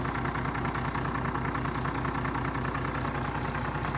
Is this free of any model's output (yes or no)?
yes